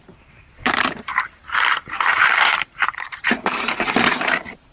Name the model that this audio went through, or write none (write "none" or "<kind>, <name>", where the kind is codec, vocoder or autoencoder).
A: vocoder, BigVGAN v2